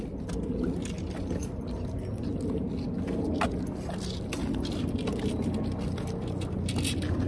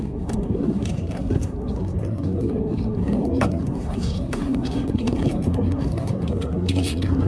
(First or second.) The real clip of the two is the first